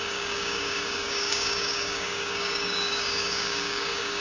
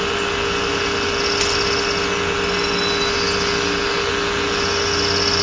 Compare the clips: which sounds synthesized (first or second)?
first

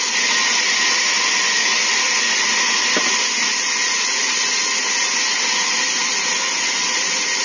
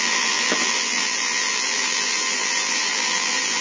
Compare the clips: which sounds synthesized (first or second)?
second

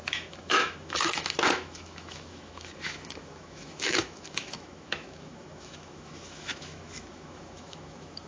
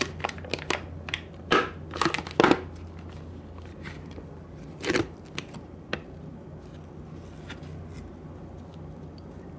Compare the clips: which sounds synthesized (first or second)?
first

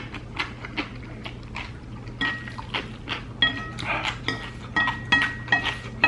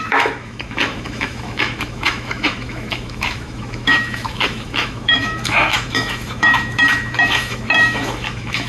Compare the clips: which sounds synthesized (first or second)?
second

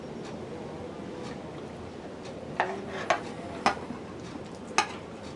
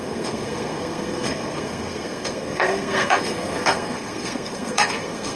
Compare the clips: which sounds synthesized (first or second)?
second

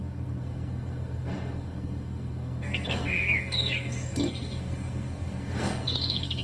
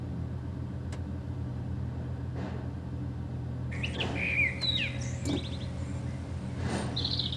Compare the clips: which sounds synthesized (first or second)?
first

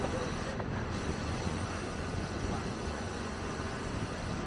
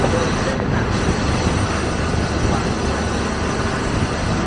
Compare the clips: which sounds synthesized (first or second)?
first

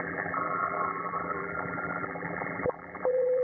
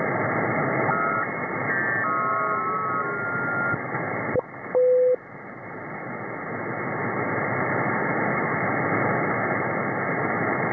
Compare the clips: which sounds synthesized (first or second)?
first